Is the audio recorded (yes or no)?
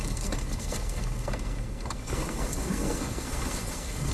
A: no